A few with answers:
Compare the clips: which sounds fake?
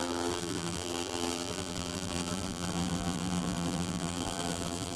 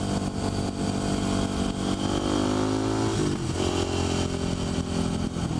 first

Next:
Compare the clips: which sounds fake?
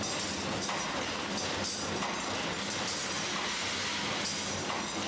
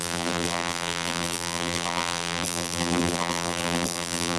second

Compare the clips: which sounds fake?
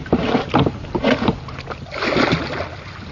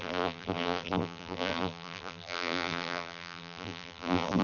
second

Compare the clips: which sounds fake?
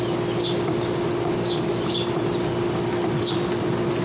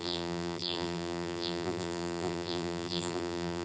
second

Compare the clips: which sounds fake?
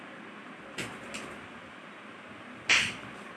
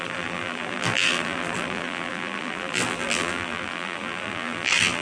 second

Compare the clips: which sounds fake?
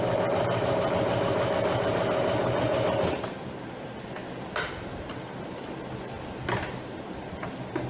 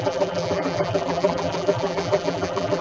second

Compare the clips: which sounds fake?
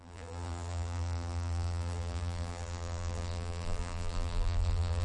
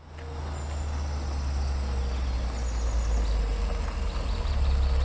first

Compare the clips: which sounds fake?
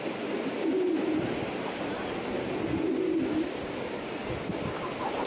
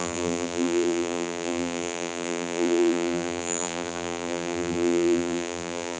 second